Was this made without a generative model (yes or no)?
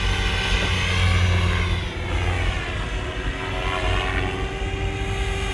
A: yes